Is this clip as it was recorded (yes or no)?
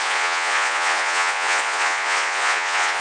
no